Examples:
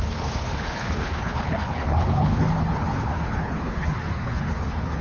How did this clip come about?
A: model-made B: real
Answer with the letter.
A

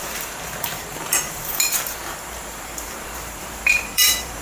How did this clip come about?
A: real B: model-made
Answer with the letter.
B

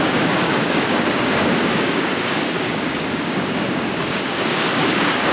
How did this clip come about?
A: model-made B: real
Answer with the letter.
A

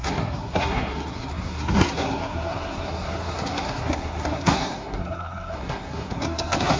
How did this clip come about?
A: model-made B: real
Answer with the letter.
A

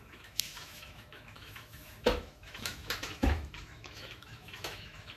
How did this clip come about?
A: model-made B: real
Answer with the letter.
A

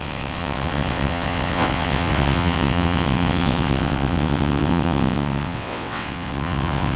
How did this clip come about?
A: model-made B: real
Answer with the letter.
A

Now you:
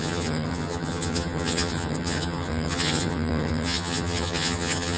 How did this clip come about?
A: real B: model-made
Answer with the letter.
B